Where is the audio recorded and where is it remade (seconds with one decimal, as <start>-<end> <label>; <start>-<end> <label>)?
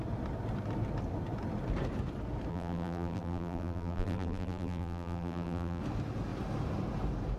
0.0-2.5 recorded; 2.5-5.8 remade; 5.8-7.4 recorded